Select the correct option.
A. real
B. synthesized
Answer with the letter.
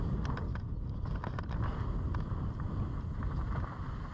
A